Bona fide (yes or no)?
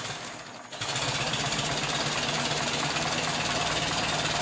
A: yes